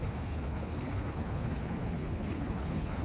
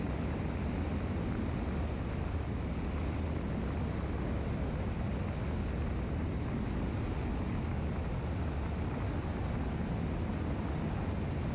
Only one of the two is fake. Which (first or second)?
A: first